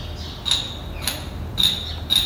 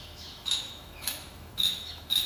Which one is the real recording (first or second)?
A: first